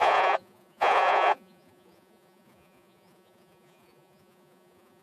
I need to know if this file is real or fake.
fake